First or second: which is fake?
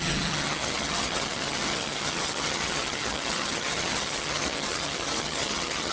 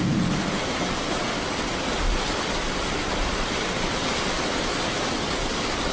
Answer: first